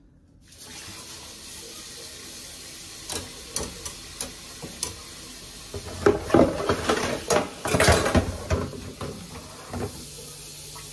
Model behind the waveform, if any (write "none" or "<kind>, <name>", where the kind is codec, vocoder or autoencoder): none